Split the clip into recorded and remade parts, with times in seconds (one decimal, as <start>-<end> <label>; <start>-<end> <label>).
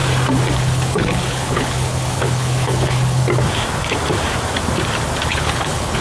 0.0-0.6 recorded; 0.6-3.2 remade; 3.2-5.3 recorded; 5.3-6.0 remade